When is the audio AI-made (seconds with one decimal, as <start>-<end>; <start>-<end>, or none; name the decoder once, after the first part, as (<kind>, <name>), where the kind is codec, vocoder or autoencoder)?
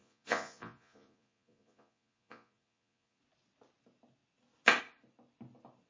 0.0-3.2 (vocoder, Vocos)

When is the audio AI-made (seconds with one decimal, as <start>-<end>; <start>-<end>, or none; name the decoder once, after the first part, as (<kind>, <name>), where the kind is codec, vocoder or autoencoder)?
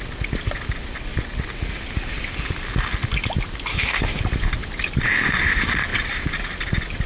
3.7-4.2 (autoencoder, DAC-VAE)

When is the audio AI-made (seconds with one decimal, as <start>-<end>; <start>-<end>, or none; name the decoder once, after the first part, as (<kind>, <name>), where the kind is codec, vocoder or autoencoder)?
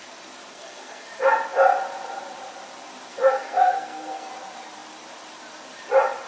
0.5-1.1 (codec, SNAC); 3.1-4.3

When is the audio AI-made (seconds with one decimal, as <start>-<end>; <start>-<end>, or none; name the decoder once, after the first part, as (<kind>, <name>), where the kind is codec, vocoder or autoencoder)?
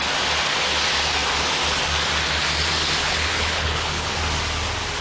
3.0-4.2 (codec, HILCodec)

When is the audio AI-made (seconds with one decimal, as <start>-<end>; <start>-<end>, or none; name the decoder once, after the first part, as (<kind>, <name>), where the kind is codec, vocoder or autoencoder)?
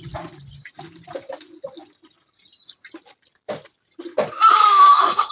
4.6-5.3 (codec, SNAC)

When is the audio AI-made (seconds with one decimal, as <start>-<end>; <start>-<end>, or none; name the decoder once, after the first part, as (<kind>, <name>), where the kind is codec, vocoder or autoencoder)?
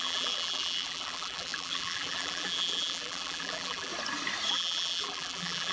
0.0-3.9 (vocoder, BigVGAN v2); 4.5-5.7